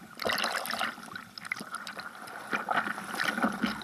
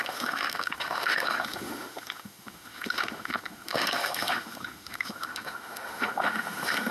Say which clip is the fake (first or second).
second